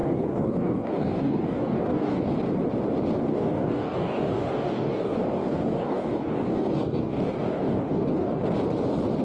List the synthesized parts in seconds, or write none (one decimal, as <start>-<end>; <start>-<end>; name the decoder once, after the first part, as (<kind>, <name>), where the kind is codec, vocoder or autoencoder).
0.0-2.2 (codec, DAC); 3.3-8.4